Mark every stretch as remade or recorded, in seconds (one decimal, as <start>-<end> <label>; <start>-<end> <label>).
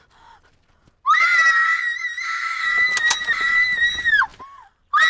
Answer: 0.0-5.1 recorded